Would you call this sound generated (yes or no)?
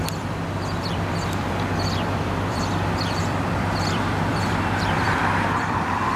yes